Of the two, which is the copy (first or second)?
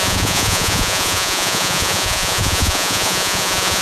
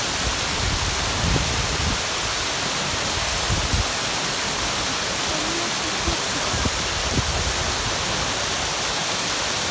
first